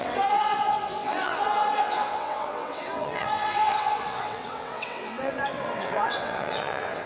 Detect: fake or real fake